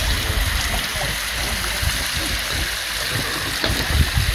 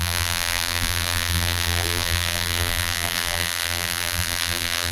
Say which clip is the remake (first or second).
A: second